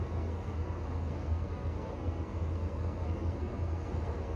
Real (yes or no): no